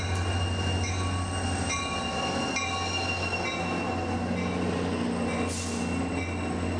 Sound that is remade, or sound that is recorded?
recorded